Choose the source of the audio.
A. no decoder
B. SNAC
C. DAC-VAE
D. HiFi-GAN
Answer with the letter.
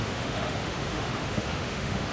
C